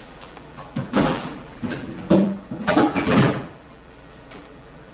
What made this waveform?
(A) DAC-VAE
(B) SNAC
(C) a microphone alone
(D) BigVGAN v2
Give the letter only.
D